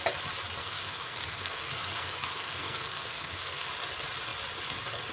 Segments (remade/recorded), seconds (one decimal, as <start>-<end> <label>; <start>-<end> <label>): 0.0-0.6 recorded; 0.6-3.7 remade; 3.7-5.1 recorded